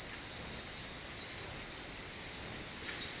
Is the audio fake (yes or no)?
no